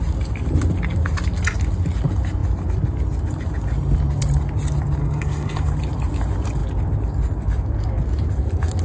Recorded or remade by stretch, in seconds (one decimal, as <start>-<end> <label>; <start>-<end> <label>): 0.0-5.0 recorded; 5.0-5.7 remade; 5.7-8.8 recorded